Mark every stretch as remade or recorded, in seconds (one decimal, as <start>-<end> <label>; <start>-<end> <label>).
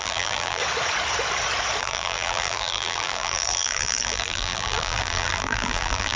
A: 0.0-0.6 remade; 0.6-1.8 recorded; 1.8-6.2 remade